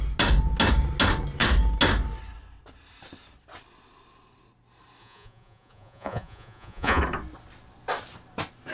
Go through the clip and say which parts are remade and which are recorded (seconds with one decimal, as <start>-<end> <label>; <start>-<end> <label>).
0.0-5.0 recorded; 5.0-7.0 remade; 7.0-8.7 recorded